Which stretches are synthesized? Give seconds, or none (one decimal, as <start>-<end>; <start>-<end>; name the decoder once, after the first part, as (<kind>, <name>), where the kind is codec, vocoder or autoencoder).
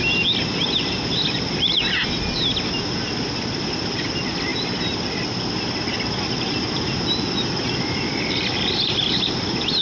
none